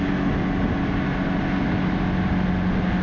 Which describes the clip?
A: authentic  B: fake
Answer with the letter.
A